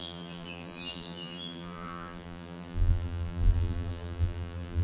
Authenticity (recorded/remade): remade